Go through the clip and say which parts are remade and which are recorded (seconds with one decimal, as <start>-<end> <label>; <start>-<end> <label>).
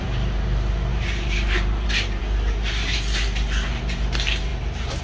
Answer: 0.0-0.9 recorded; 0.9-2.2 remade; 2.2-4.5 recorded; 4.5-5.0 remade